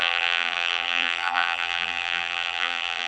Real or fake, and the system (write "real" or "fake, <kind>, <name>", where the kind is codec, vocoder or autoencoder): fake, vocoder, BigVGAN v2